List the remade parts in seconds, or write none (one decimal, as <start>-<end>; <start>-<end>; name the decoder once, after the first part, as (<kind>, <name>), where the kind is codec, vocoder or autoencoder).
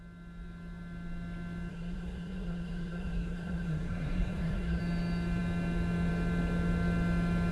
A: 1.7-4.8 (codec, SNAC)